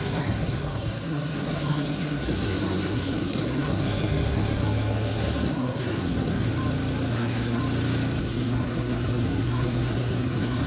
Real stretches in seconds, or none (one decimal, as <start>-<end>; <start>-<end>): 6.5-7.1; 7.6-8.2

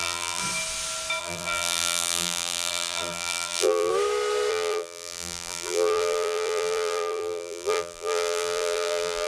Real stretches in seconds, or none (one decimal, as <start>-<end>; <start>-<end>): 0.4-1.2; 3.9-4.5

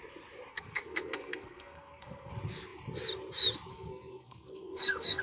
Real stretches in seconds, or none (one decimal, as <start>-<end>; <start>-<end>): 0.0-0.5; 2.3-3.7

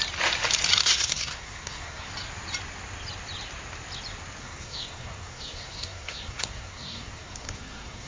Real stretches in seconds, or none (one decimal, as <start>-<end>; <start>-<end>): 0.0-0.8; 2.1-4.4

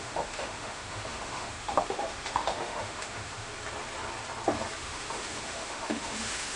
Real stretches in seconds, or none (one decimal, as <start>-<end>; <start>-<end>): 3.5-4.8

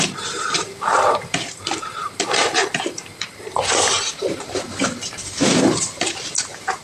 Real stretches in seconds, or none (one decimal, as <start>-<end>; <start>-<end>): none

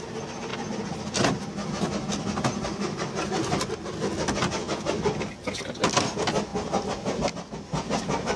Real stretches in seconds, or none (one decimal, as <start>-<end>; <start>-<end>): 0.0-8.4